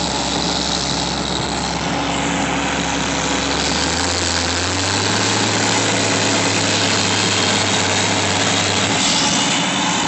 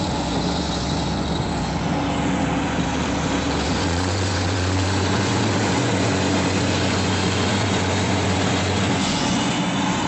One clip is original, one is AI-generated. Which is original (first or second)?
first